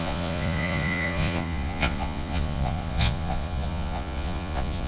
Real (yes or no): no